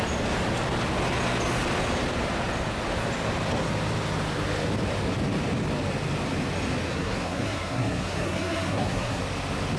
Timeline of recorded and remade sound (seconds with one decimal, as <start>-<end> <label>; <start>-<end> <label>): 0.0-6.9 recorded; 6.9-9.2 remade; 9.2-9.8 recorded